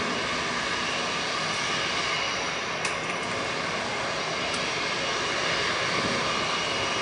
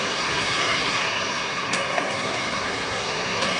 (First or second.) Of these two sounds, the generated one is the second